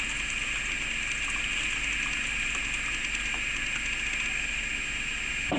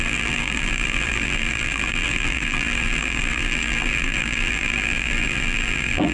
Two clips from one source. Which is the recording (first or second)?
first